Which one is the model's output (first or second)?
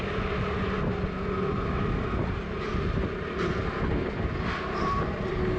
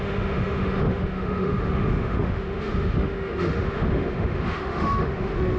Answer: second